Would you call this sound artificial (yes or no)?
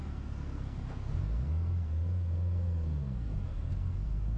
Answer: yes